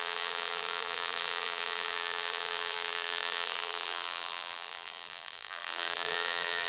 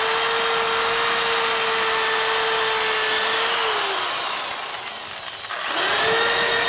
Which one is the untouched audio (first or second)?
second